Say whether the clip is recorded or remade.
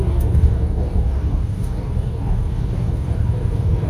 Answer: remade